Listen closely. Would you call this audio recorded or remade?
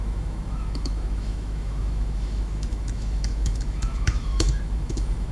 remade